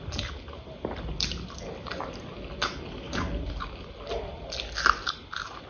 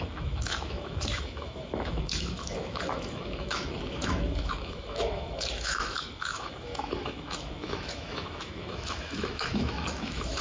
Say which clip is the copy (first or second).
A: second